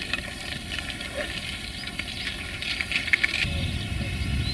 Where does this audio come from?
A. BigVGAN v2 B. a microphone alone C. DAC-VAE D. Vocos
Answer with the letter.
B